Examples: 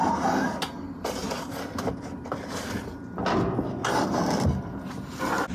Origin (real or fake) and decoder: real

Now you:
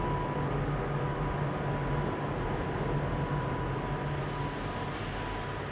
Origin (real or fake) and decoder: real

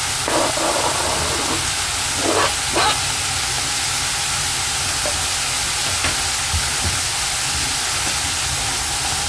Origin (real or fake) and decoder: real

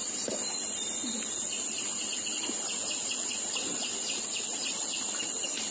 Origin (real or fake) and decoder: real